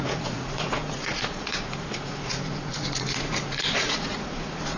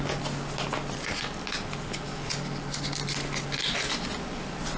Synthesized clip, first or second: first